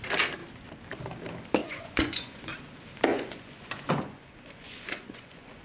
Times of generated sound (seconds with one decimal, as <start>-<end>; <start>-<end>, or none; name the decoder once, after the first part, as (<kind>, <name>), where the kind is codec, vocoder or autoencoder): 1.6-2.4 (vocoder, Vocos); 3.1-5.6

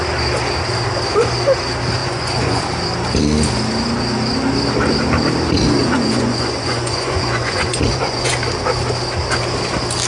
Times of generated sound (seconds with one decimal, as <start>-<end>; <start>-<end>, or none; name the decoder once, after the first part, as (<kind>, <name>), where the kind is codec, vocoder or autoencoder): 2.0-2.6 (vocoder, Vocos); 5.8-8.3